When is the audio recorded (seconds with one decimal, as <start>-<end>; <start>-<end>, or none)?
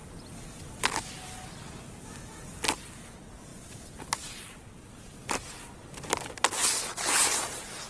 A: 0.0-3.5; 6.8-7.9